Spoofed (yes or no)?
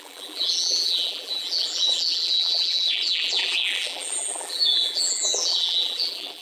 yes